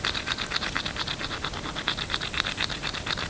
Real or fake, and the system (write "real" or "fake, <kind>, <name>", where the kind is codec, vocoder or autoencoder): real